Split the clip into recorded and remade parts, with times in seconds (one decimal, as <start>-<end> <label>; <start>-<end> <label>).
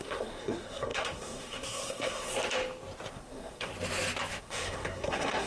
0.0-2.3 remade; 2.3-3.1 recorded; 3.1-3.7 remade; 3.7-4.4 recorded; 4.4-5.5 remade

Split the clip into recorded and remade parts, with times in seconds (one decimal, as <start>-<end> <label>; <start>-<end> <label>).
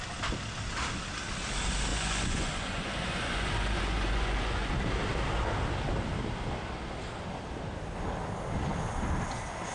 0.0-1.9 recorded; 1.9-4.7 remade; 4.7-9.7 recorded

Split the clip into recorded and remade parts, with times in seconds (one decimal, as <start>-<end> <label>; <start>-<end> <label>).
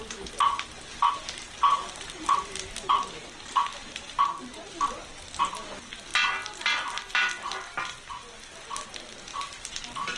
0.0-1.7 recorded; 1.7-5.2 remade; 5.2-9.3 recorded; 9.3-10.2 remade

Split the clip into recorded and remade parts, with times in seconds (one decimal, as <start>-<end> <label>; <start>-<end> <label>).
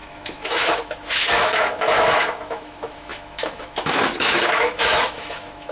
0.0-5.7 remade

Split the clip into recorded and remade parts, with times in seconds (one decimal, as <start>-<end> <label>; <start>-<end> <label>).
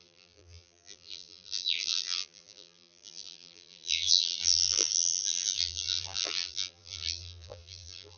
0.0-8.2 remade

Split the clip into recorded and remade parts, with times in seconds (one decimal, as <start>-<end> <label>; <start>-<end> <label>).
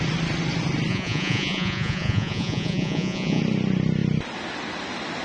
0.0-0.9 recorded; 0.9-3.4 remade; 3.4-5.2 recorded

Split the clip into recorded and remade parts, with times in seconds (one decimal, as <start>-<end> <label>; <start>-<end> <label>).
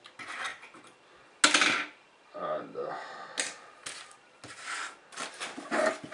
0.0-6.1 recorded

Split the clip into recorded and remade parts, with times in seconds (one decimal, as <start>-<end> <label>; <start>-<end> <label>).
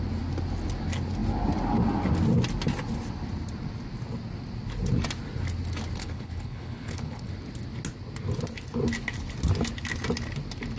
0.0-6.0 recorded; 6.0-7.3 remade; 7.3-10.8 recorded